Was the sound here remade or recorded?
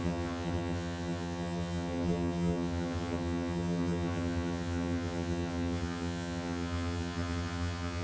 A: remade